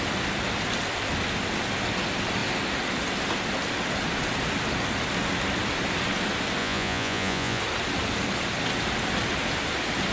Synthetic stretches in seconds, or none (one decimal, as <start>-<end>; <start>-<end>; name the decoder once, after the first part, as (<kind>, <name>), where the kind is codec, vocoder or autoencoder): 6.6-7.6 (vocoder, Vocos)